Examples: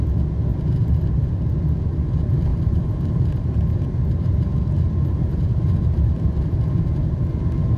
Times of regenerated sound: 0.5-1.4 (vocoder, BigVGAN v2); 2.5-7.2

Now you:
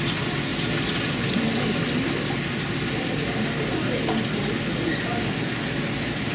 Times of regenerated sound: none